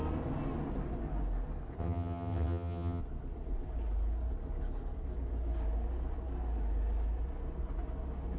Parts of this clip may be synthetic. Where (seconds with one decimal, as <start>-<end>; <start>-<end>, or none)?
1.8-3.0